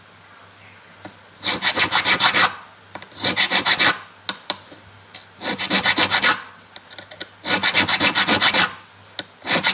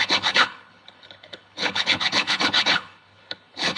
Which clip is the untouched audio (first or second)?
first